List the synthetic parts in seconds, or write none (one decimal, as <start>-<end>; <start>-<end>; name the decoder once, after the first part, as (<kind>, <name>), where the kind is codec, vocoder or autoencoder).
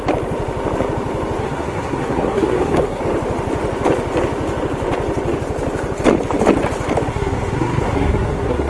1.4-3.0 (codec, SNAC); 7.1-8.7